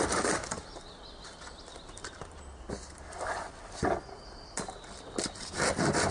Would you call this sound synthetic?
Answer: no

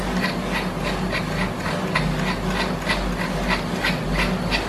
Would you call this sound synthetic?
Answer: no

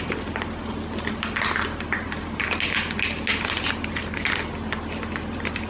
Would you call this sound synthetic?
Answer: no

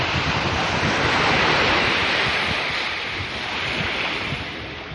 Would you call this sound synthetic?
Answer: yes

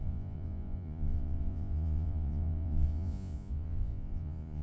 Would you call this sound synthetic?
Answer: yes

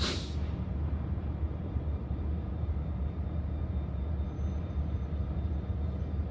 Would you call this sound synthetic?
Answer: no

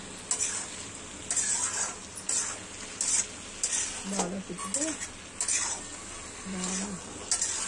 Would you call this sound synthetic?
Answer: no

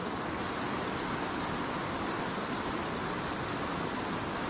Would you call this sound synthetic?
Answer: no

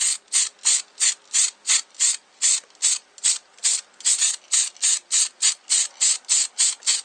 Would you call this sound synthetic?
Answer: no